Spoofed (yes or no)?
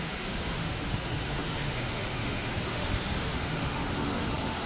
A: yes